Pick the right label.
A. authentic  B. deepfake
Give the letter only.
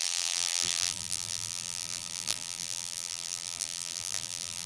B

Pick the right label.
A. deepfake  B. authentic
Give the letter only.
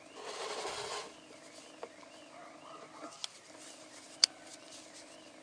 B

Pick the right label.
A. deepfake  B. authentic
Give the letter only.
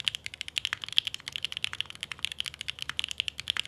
B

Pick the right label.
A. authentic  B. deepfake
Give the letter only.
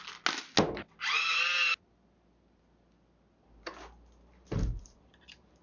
A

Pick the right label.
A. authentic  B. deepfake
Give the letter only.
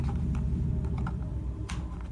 B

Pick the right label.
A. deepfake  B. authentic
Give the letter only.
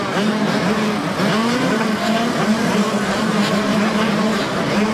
A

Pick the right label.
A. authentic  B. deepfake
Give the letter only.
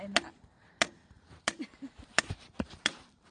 B